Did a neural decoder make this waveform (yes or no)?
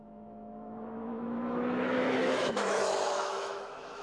yes